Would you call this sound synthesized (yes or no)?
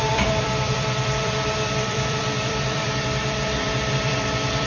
yes